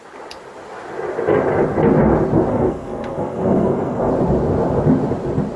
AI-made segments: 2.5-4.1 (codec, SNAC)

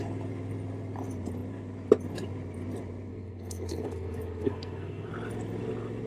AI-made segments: 3.1-5.1 (codec, SNAC)

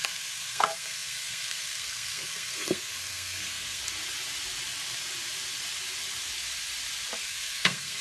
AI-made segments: 0.0-3.8 (codec, SNAC); 7.2-8.0

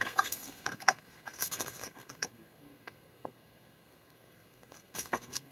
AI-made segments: 0.0-5.5 (codec, SNAC)

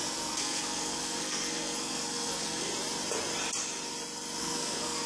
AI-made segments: 0.0-2.7 (codec, SNAC); 4.4-5.1